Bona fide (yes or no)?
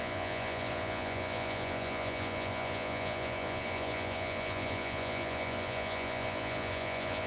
no